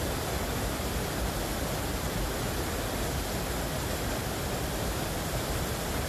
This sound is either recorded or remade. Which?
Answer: recorded